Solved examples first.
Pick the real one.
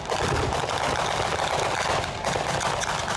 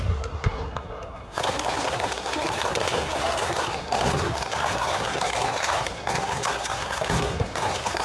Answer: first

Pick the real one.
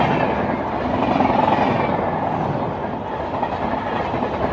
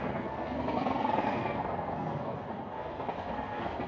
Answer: first